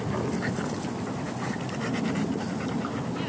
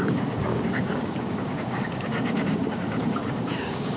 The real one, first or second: first